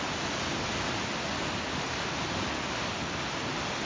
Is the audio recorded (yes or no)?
yes